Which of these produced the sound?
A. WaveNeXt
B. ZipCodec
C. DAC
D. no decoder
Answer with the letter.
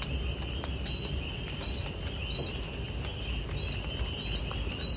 D